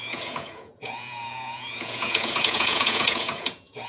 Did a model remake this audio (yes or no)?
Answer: yes